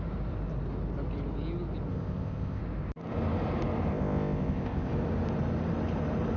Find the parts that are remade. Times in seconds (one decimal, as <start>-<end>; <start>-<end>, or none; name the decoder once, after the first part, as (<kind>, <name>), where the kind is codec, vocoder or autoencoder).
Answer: 1.9-2.6 (codec, ZipCodec); 3.9-4.9